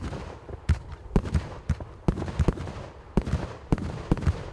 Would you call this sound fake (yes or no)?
no